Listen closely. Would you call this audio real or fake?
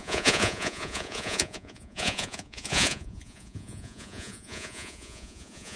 fake